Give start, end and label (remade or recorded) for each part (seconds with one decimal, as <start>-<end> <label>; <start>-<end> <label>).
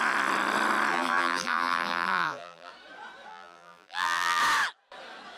0.0-0.9 recorded; 0.9-2.7 remade; 2.7-3.3 recorded; 3.3-4.4 remade; 4.4-5.4 recorded